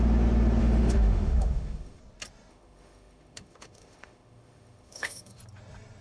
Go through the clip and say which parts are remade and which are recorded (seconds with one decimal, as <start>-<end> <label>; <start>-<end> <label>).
0.0-0.6 recorded; 0.6-2.0 remade; 2.0-2.5 recorded; 2.5-5.4 remade; 5.4-6.0 recorded